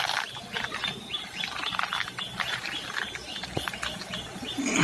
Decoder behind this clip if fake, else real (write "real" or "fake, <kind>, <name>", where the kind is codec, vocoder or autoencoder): real